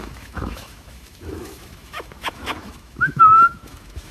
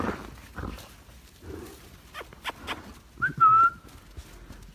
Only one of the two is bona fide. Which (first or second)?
second